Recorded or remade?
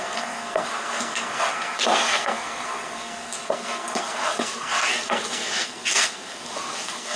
remade